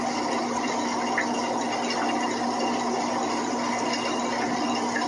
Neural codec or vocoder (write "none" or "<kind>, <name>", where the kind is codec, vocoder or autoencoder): none